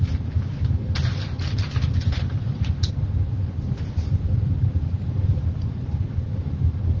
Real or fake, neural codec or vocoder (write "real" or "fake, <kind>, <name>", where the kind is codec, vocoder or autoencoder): real